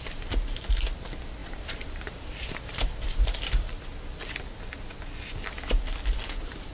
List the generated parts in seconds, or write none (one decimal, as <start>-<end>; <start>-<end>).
1.4-3.5; 6.2-6.7